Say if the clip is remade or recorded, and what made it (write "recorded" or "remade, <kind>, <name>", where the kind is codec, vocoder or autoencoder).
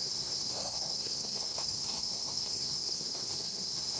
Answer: remade, codec, SNAC